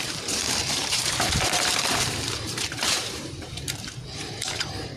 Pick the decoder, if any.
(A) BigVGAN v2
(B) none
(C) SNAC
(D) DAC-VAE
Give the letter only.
A